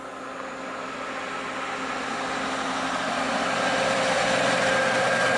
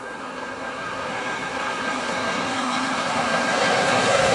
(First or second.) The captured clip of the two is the first